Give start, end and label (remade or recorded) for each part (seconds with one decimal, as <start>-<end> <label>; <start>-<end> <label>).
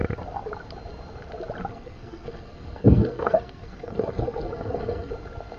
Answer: 0.0-1.7 recorded; 1.7-5.1 remade; 5.1-5.6 recorded